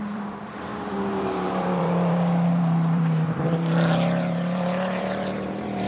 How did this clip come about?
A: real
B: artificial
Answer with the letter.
B